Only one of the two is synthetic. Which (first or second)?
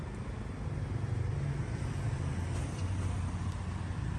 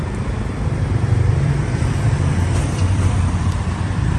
second